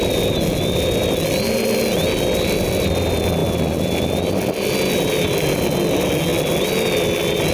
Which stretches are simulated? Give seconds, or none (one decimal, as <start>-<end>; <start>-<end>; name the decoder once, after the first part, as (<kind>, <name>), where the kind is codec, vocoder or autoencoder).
none